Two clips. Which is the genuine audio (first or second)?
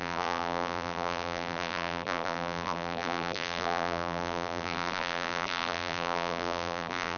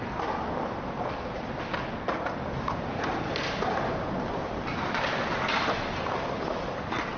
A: second